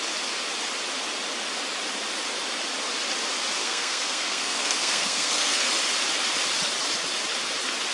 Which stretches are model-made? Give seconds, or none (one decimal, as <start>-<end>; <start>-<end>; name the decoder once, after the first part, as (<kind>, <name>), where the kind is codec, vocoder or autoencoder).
3.6-5.6 (codec, SNAC)

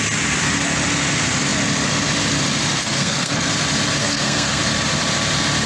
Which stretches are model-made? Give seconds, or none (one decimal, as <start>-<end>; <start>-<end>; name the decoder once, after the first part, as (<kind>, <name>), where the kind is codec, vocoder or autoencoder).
2.8-3.5 (codec, SNAC); 4.0-4.6

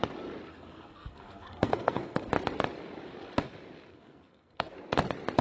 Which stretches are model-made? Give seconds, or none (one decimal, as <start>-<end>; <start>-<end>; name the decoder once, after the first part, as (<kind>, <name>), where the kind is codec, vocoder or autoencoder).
0.5-2.3 (codec, SNAC); 3.9-4.7

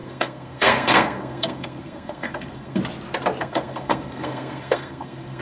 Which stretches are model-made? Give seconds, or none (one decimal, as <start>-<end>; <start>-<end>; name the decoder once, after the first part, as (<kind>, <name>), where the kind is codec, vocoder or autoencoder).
0.0-2.8 (codec, SNAC); 3.4-5.4

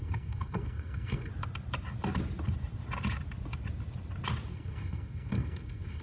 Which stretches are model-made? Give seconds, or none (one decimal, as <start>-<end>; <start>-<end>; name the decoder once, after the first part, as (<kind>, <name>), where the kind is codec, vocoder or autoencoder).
0.0-1.3 (codec, SNAC); 4.5-6.0

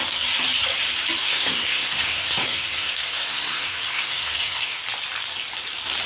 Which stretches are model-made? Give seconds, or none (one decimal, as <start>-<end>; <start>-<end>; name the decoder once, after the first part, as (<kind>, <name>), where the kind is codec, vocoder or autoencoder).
1.2-4.8 (codec, SNAC)

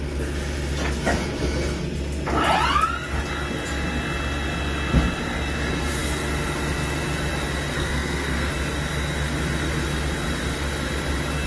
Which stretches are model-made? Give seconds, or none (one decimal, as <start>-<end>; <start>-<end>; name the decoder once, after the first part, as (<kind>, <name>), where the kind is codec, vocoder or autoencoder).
7.7-8.5 (codec, SNAC)